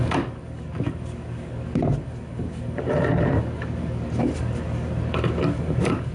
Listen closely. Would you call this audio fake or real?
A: fake